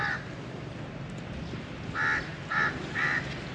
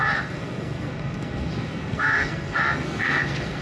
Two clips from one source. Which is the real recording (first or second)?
first